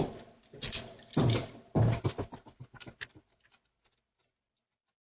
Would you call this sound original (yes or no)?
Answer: yes